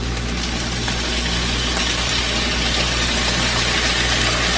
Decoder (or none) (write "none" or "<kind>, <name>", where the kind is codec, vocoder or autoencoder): none